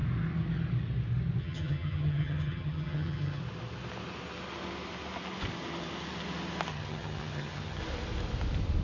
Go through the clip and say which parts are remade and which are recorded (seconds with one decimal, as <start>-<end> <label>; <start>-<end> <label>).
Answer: 0.0-1.4 recorded; 1.4-3.4 remade; 3.4-6.7 recorded; 6.7-7.8 remade; 7.8-8.8 recorded